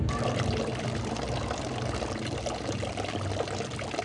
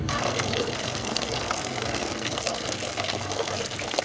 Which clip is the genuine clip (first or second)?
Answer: first